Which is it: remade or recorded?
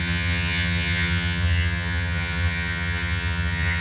remade